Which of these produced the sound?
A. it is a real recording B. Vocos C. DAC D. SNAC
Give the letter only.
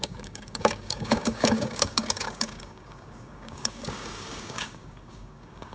C